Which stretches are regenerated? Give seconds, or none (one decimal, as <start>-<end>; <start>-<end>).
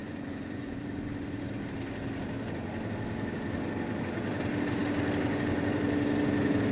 0.0-0.8